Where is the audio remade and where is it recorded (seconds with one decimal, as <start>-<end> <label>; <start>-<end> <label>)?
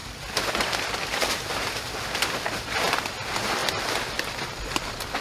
0.0-3.1 remade; 3.1-3.6 recorded; 3.6-4.8 remade; 4.8-5.2 recorded